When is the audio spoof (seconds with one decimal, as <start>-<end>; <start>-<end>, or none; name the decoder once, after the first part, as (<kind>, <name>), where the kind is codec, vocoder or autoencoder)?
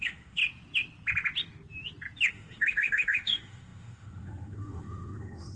0.0-0.4 (autoencoder, DAC-VAE); 2.3-5.6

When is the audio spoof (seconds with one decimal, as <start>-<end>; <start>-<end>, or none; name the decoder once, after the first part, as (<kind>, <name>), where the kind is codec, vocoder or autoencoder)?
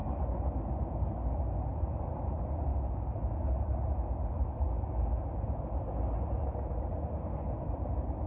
none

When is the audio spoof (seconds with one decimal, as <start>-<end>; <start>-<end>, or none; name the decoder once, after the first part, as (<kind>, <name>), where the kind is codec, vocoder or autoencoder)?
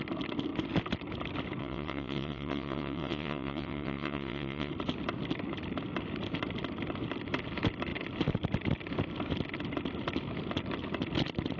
1.6-4.7 (vocoder, WaveNeXt)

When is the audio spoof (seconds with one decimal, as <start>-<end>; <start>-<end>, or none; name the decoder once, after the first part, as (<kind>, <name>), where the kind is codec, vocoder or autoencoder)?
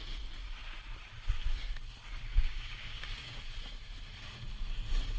2.3-3.4 (codec, DAC)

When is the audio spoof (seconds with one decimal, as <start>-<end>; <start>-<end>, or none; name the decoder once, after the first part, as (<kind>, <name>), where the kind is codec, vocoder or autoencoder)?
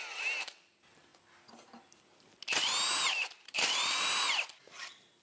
none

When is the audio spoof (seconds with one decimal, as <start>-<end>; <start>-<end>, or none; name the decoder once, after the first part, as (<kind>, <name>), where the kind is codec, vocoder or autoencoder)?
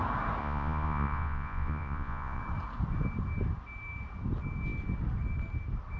0.4-2.4 (vocoder, Vocos)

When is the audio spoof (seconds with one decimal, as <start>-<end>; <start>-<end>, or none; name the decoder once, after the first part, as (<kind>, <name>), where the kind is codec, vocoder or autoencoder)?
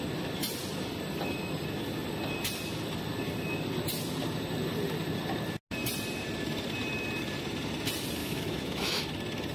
8.2-9.0 (autoencoder, DAC-VAE)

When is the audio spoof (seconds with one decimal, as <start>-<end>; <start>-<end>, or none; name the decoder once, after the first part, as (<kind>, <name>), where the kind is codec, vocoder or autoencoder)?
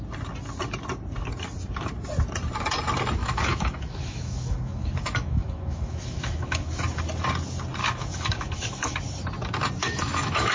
3.2-7.0 (autoencoder, DAC-VAE); 7.8-9.0; 9.8-10.5